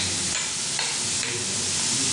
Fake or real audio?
real